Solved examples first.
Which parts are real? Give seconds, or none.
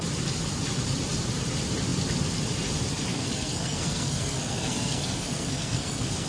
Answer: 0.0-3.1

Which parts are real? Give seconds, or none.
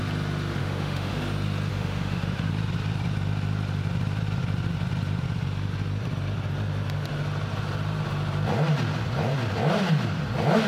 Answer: 0.0-0.6; 1.2-1.7; 2.5-10.7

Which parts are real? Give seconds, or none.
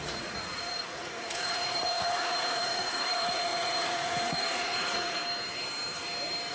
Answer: 5.2-6.5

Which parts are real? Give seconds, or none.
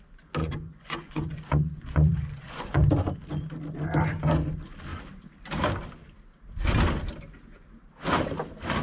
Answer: 0.0-0.4; 2.9-8.8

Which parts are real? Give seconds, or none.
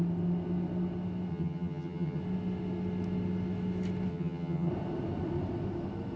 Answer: 0.0-1.3; 2.2-4.1; 4.7-6.2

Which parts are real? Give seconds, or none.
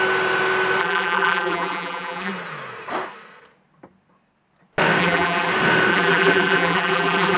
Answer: 0.0-0.8; 2.3-5.0; 5.5-5.9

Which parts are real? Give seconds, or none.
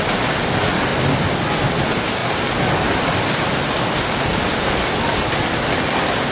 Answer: 0.0-6.3